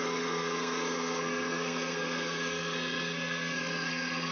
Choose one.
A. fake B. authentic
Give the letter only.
A